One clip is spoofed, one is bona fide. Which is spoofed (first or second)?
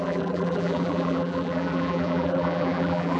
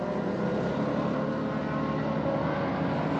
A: first